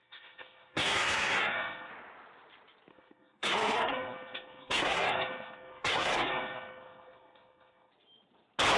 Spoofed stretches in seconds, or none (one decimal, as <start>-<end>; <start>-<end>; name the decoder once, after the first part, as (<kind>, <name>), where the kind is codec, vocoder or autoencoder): 0.0-1.9 (codec, SNAC); 2.9-7.9